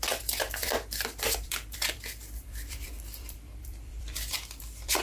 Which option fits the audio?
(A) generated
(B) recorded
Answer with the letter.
A